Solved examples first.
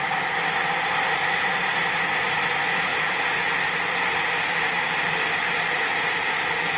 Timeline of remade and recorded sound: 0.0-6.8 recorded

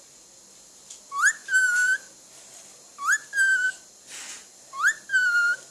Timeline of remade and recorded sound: 0.0-5.7 recorded

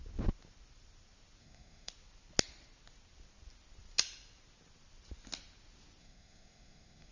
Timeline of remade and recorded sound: 0.0-1.4 recorded; 1.4-1.9 remade; 1.9-6.0 recorded; 6.0-7.1 remade

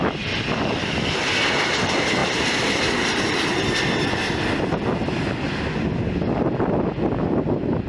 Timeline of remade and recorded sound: 0.0-7.9 recorded

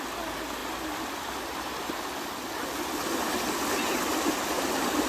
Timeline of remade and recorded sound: 0.0-5.1 recorded

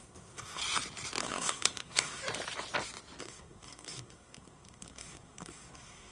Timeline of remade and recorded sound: 0.0-0.6 remade; 0.6-1.2 recorded; 1.2-2.2 remade; 2.2-3.2 recorded; 3.2-6.1 remade